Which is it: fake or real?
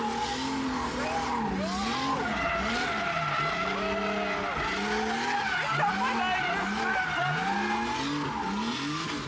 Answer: real